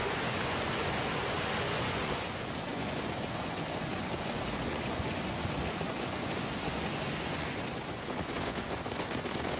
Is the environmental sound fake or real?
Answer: fake